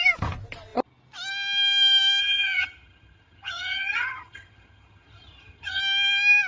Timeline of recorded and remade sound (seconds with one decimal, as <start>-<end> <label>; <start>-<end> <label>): 0.0-2.2 recorded; 2.2-5.8 remade; 5.8-6.5 recorded